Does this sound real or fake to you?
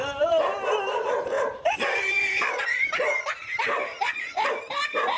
fake